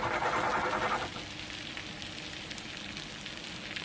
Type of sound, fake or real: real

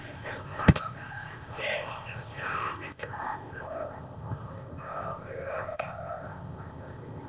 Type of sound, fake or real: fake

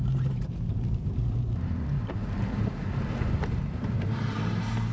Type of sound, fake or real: fake